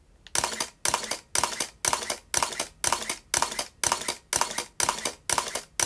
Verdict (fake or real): real